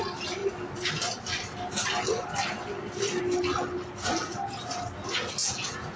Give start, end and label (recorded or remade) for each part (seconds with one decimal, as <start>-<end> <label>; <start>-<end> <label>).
0.0-5.4 recorded; 5.4-6.0 remade